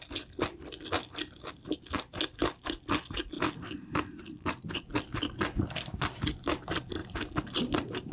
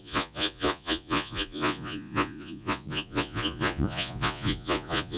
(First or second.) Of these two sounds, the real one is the first